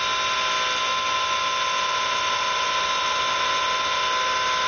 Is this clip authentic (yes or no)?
yes